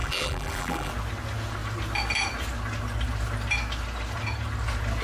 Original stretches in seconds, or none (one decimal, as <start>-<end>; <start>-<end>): 0.9-5.0